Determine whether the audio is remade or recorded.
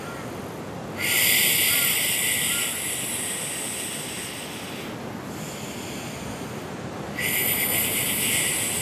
recorded